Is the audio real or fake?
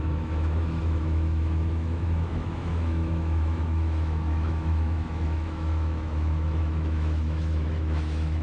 fake